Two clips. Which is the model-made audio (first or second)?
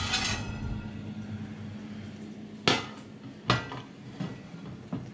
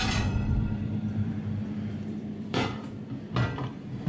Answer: second